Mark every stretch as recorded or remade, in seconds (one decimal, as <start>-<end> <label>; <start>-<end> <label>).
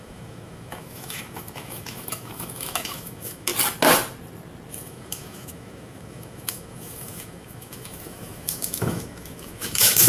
0.0-3.5 remade; 3.5-4.7 recorded; 4.7-10.1 remade